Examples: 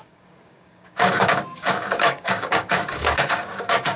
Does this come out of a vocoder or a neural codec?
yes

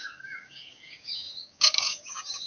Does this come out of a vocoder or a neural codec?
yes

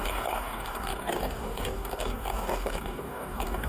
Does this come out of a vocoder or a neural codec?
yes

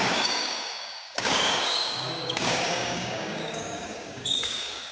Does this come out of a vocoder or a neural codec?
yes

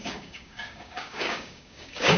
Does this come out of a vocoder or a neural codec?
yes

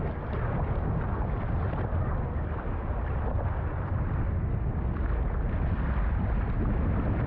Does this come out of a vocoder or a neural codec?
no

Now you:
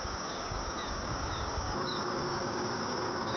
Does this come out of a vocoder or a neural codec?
yes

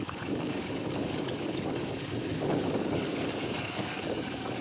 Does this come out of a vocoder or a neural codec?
yes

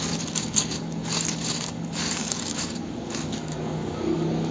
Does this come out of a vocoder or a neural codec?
yes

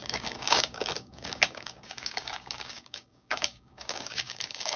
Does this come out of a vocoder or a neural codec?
yes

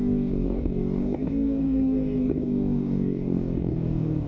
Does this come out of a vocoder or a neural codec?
yes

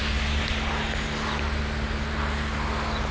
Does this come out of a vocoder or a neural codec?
no